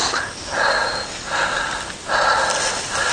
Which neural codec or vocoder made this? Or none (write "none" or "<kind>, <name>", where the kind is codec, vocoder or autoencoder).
none